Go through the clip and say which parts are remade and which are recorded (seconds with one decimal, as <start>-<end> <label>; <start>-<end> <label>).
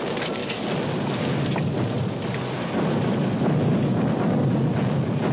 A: 0.0-5.3 recorded